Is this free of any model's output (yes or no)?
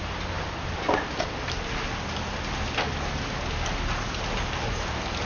yes